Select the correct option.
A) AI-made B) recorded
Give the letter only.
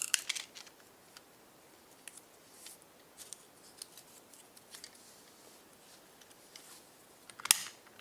B